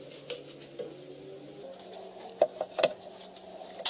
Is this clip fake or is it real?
real